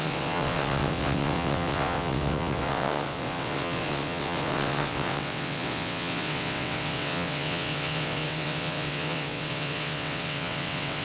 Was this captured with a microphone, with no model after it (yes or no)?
no